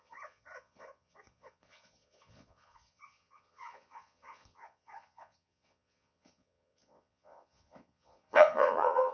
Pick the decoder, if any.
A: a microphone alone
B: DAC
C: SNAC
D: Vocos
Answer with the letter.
D